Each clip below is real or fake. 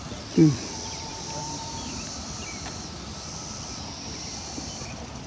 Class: fake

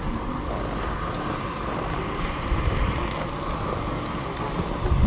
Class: real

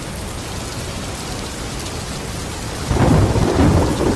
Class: real